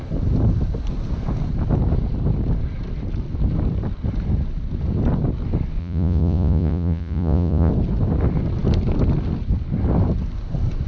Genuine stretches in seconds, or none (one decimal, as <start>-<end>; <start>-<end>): 0.0-5.8; 7.7-10.9